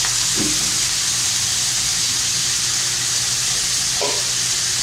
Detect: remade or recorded recorded